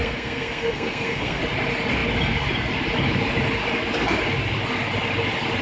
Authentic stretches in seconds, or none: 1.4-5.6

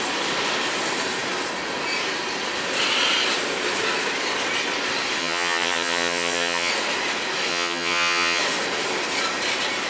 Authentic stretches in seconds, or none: 0.0-5.2; 6.7-7.5; 8.4-9.9

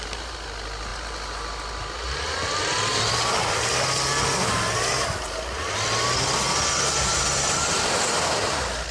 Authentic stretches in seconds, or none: 0.0-0.9; 2.3-8.9